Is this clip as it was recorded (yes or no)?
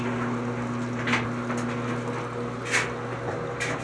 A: yes